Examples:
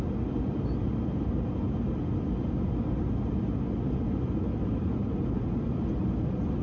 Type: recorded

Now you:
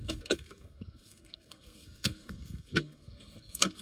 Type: remade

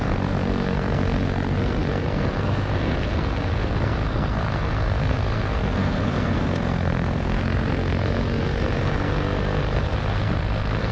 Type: remade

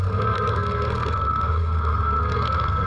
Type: remade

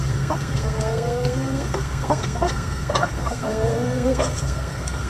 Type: remade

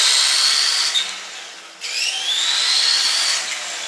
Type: recorded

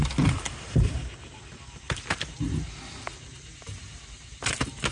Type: recorded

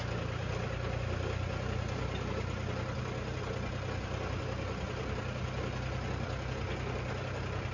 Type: recorded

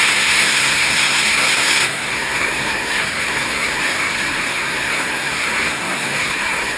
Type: remade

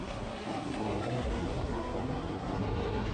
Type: remade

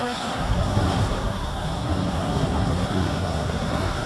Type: remade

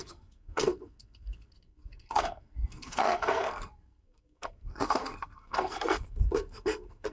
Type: remade